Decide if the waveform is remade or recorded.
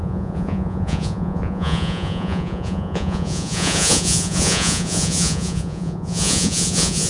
remade